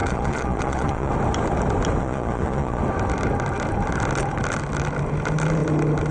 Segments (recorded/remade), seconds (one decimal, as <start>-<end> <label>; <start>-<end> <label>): 0.0-1.1 remade; 1.1-2.0 recorded; 2.0-2.8 remade; 2.8-6.1 recorded